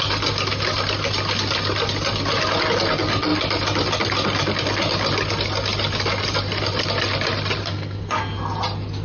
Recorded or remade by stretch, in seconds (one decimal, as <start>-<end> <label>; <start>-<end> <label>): 0.0-7.6 recorded; 7.6-8.2 remade; 8.2-9.0 recorded